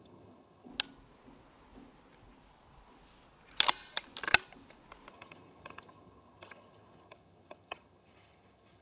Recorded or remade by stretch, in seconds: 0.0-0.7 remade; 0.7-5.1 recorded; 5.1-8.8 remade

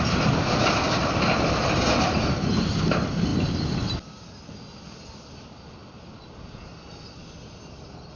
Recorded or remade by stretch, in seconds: 0.0-8.2 recorded

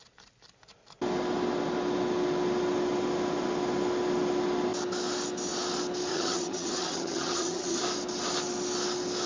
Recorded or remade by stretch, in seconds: 0.0-6.1 recorded; 6.1-7.8 remade; 7.8-9.3 recorded

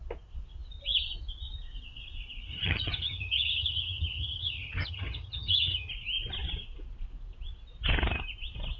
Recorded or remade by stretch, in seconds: 0.0-2.5 recorded; 2.5-5.9 remade; 5.9-8.8 recorded

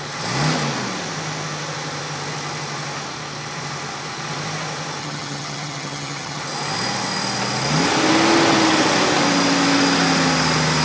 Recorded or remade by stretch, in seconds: 0.0-5.0 recorded; 5.0-6.4 remade; 6.4-10.8 recorded

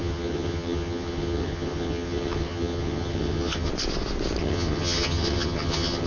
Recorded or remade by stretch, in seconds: 0.0-3.7 remade; 3.7-4.4 recorded; 4.4-6.1 remade

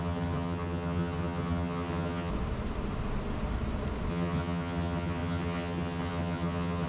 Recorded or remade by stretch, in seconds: 0.0-2.3 remade; 2.3-4.1 recorded; 4.1-6.9 remade